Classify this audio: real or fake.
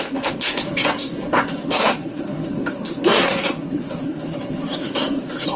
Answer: fake